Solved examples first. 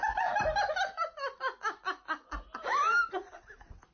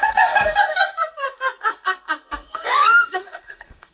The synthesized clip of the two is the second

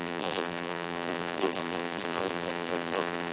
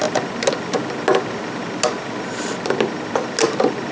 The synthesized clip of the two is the first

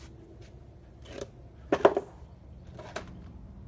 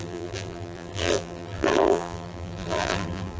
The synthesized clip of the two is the second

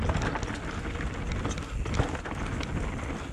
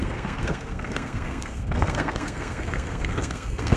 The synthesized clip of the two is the second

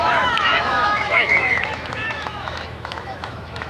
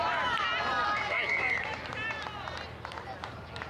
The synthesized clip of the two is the first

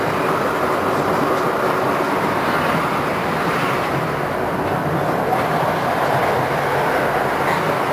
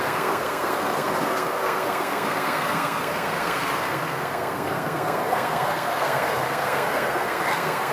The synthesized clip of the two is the second